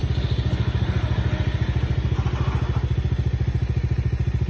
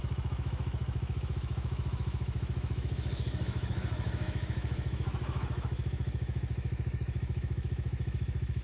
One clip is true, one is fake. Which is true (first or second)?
first